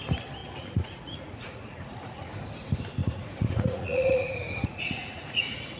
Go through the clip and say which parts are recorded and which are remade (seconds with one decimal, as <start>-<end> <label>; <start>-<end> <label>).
0.0-0.4 recorded; 0.4-2.3 remade; 2.3-3.0 recorded; 3.0-5.8 remade